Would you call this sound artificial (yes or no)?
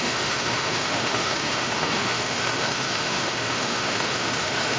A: yes